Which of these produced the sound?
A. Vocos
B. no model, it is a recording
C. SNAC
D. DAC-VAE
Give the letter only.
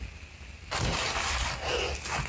B